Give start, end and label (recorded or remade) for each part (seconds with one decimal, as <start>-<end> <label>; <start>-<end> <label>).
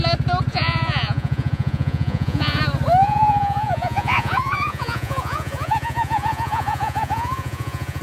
0.0-0.5 recorded; 0.5-2.6 remade; 2.6-3.0 recorded; 3.0-8.0 remade